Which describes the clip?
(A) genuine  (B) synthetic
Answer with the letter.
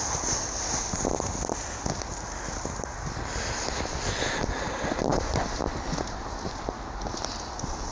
A